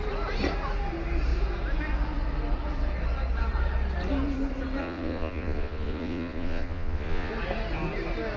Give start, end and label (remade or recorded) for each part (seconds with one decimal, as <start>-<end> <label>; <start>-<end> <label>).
0.0-4.8 recorded; 4.8-7.3 remade; 7.3-8.4 recorded